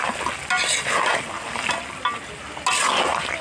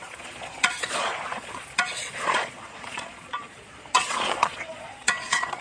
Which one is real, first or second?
first